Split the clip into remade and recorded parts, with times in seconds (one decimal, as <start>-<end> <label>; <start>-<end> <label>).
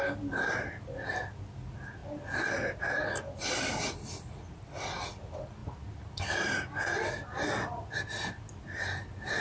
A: 0.0-9.4 recorded